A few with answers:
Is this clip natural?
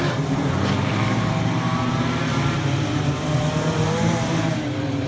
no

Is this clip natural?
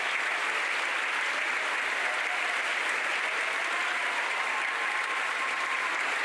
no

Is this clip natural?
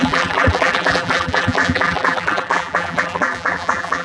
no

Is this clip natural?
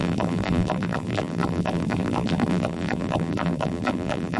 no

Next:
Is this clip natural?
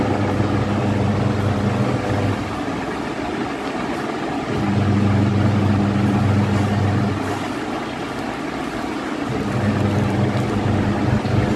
yes